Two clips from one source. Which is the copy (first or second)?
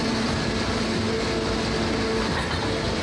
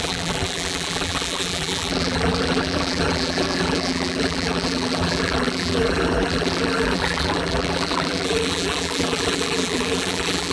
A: second